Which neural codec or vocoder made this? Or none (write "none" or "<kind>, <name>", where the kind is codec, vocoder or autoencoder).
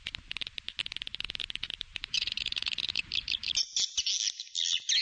none